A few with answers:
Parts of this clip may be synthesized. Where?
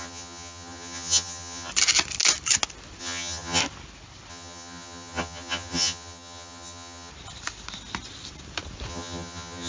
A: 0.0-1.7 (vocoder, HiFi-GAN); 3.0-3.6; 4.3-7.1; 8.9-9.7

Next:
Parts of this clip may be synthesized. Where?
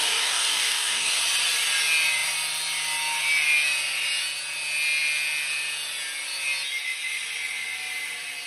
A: 0.0-1.1 (codec, DAC)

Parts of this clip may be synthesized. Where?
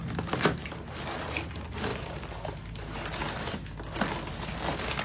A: none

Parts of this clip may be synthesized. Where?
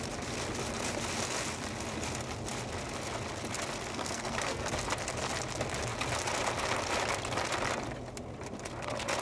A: 3.9-4.7 (codec, SNAC)